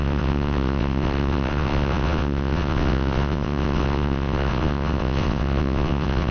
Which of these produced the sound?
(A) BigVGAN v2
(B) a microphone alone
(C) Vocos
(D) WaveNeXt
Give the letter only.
D